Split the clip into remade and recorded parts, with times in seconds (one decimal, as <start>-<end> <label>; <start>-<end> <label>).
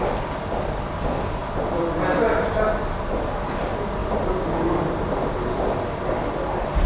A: 0.0-6.9 recorded